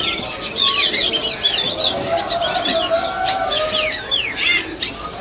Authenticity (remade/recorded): recorded